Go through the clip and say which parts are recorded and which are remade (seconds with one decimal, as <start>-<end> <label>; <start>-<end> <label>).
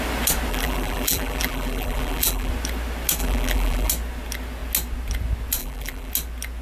0.0-0.5 recorded; 0.5-2.5 remade; 2.5-3.2 recorded; 3.2-3.9 remade; 3.9-5.6 recorded; 5.6-6.1 remade; 6.1-6.6 recorded